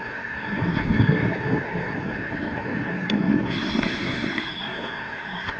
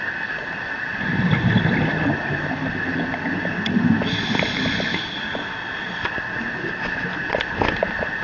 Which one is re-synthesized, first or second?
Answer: first